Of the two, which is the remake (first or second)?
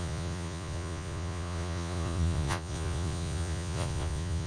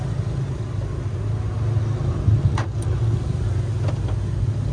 first